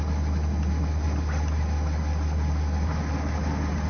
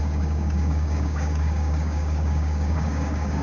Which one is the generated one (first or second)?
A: second